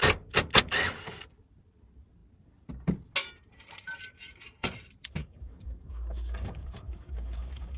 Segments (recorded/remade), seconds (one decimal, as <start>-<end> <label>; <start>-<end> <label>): 0.0-5.2 recorded; 5.2-7.8 remade

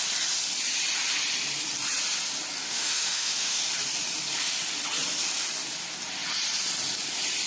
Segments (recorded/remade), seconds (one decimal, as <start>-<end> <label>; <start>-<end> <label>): 0.0-2.6 recorded; 2.6-3.6 remade; 3.6-7.5 recorded

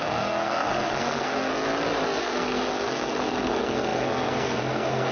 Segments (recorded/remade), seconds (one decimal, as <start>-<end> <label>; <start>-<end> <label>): 0.0-1.5 remade; 1.5-2.2 recorded; 2.2-5.1 remade

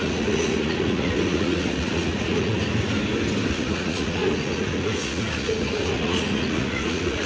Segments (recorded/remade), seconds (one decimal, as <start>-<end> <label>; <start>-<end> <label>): 0.0-2.6 remade; 2.6-3.5 recorded; 3.5-7.3 remade

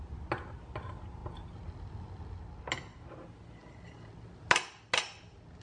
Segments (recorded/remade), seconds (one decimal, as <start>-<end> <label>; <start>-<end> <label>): 0.0-5.6 recorded